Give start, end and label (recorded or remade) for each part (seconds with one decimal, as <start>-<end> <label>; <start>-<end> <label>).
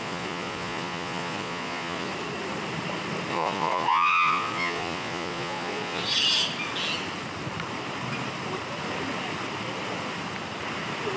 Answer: 0.0-2.1 remade; 2.1-3.3 recorded; 3.3-6.0 remade; 6.0-11.2 recorded